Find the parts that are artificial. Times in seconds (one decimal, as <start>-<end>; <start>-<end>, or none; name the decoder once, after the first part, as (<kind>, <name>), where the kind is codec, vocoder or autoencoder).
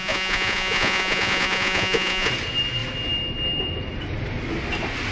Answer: 0.0-2.3 (vocoder, Vocos)